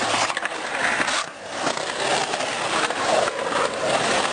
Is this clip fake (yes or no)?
no